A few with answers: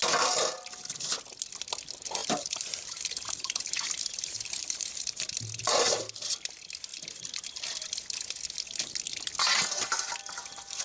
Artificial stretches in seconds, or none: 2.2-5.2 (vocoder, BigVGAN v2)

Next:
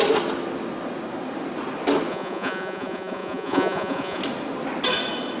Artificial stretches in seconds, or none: 2.1-4.2 (vocoder, Vocos)

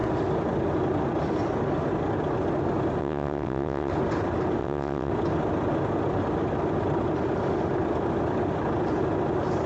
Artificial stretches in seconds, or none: 3.0-3.9 (vocoder, WaveNeXt); 4.6-5.1